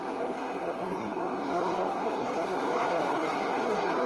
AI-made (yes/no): yes